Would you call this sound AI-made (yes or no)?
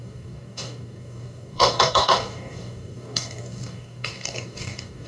yes